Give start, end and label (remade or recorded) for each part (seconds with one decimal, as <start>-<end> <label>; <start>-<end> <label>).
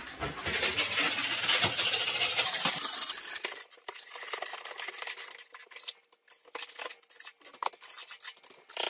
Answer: 0.0-8.9 recorded